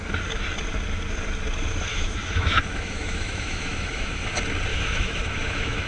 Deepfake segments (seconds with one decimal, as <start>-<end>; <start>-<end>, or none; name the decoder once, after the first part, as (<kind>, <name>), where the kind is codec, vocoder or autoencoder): 1.9-4.2 (autoencoder, DAC-VAE); 4.7-5.9